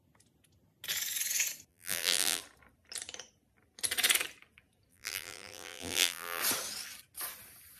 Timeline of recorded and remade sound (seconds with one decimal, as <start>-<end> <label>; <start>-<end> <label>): 0.0-1.7 recorded; 1.7-2.4 remade; 2.4-4.9 recorded; 4.9-6.4 remade; 6.4-7.8 recorded